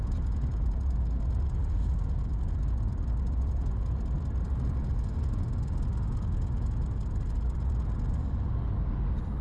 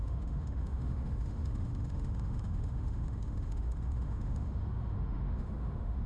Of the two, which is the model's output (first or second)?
second